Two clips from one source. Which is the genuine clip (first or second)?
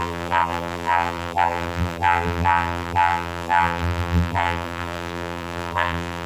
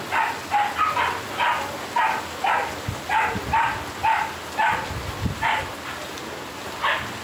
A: second